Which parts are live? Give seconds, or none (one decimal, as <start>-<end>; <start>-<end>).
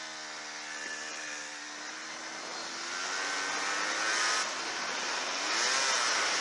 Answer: 0.0-1.1; 1.9-6.4